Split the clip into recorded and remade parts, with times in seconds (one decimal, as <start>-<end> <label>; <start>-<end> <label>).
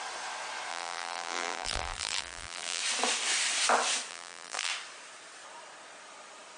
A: 0.0-0.7 recorded; 0.7-2.8 remade; 2.8-4.1 recorded; 4.1-4.7 remade; 4.7-6.6 recorded